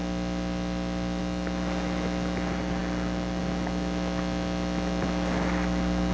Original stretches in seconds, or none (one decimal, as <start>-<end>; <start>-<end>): 0.0-6.1